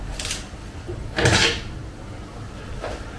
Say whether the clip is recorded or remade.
recorded